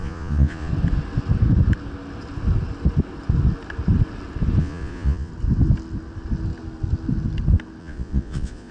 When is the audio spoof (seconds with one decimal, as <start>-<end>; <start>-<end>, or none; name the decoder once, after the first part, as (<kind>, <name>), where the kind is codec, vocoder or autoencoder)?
0.0-0.7 (vocoder, Vocos); 4.6-5.3; 7.8-8.7